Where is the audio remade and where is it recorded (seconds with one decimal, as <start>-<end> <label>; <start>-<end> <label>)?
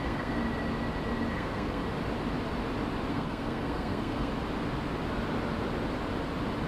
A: 0.0-0.4 remade; 0.4-1.3 recorded; 1.3-1.8 remade; 1.8-3.1 recorded; 3.1-4.3 remade; 4.3-6.7 recorded